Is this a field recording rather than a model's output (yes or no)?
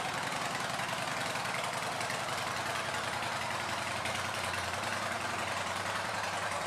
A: no